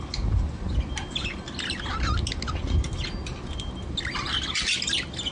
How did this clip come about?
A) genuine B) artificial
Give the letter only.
A